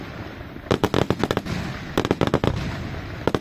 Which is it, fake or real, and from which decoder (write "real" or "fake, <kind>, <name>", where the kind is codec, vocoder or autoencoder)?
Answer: real